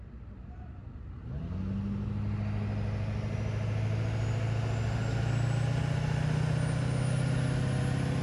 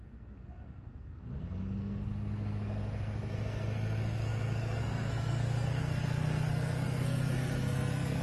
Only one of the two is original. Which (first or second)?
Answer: first